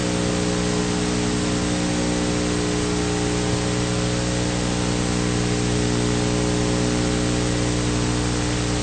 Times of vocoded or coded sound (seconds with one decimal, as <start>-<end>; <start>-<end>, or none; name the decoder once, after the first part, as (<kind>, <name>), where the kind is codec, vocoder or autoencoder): none

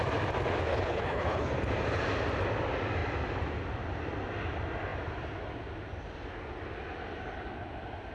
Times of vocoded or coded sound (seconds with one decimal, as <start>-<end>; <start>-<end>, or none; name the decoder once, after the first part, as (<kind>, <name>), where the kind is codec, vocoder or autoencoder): 0.7-1.5 (codec, HILCodec)